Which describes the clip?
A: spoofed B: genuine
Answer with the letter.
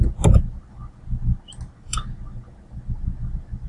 B